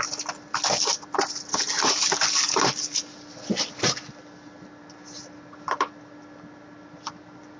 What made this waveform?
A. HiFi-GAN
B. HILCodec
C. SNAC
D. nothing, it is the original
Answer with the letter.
D